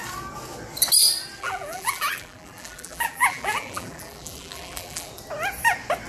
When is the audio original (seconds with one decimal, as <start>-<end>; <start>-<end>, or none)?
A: 0.0-1.4; 5.1-6.1